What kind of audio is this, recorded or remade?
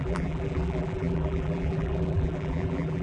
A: remade